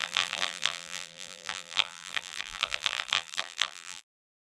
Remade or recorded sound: remade